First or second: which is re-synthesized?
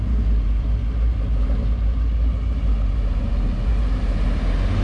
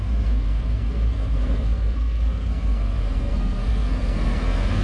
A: second